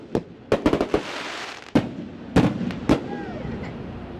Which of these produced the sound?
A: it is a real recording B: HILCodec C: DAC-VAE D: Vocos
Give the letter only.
A